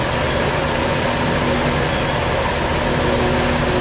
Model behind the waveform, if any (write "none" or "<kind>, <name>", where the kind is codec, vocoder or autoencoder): none